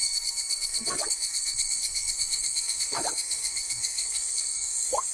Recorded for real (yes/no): no